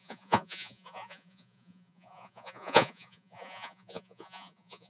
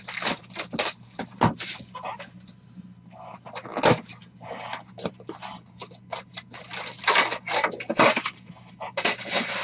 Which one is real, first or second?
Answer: second